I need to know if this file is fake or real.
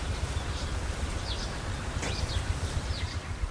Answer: real